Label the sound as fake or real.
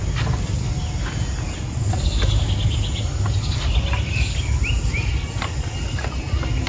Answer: real